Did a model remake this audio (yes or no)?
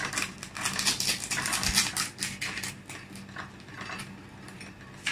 no